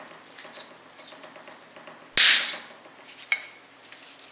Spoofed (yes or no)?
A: no